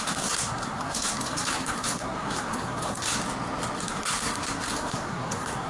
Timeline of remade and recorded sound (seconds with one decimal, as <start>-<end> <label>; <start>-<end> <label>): 0.0-3.2 remade; 3.2-3.8 recorded; 3.8-5.7 remade